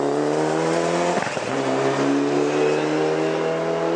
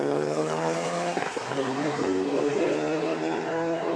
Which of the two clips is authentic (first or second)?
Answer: first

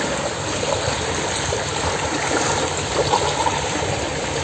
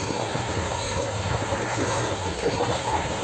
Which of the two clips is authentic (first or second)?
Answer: first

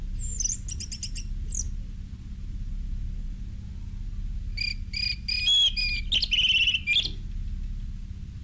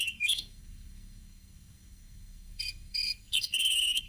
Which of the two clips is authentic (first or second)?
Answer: first